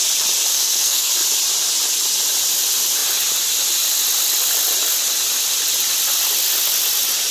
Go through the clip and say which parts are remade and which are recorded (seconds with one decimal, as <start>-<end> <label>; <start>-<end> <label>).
0.0-0.5 recorded; 0.5-1.1 remade; 1.1-7.3 recorded